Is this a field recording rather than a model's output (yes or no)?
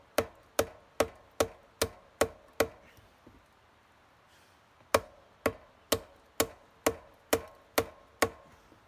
yes